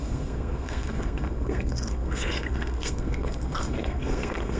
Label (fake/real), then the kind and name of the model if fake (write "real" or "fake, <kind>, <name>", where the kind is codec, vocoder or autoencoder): fake, codec, SNAC